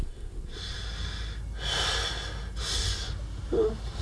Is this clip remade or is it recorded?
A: recorded